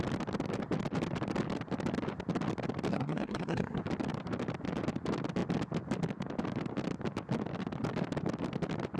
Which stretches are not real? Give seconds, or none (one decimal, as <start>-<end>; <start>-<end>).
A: 2.9-3.8

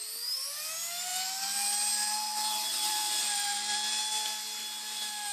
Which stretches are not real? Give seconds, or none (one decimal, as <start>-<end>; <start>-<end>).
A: 1.1-4.0

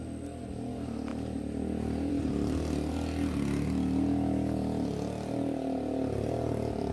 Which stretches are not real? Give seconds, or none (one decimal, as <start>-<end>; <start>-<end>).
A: none